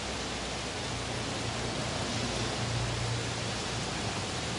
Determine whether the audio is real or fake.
real